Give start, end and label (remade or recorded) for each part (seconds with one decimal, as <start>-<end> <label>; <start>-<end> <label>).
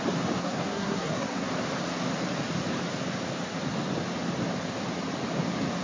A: 0.0-0.4 recorded; 0.4-1.5 remade; 1.5-5.8 recorded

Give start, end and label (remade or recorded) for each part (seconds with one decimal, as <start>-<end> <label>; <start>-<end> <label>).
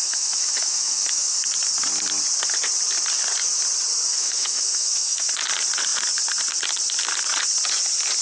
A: 0.0-1.4 remade; 1.4-4.1 recorded; 4.1-5.3 remade; 5.3-8.2 recorded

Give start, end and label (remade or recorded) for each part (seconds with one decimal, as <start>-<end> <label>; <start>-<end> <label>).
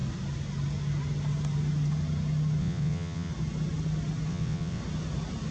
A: 0.0-2.6 recorded; 2.6-3.3 remade; 3.3-4.3 recorded; 4.3-4.8 remade; 4.8-5.5 recorded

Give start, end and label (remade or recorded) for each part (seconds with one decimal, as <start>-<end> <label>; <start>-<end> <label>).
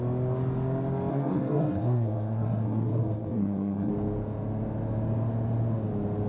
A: 0.0-1.1 recorded; 1.1-3.9 remade; 3.9-6.3 recorded